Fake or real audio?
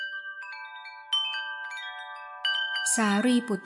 real